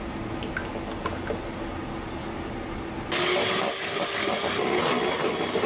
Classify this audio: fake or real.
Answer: real